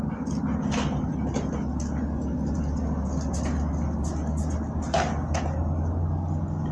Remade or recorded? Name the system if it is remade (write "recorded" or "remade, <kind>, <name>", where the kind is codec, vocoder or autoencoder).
recorded